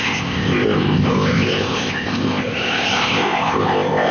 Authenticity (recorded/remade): remade